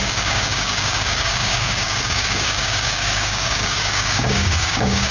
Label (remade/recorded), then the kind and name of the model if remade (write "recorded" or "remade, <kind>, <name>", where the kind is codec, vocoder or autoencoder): remade, codec, DAC